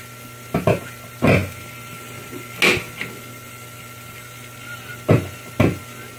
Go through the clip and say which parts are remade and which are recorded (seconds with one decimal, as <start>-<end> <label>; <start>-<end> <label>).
0.0-6.2 recorded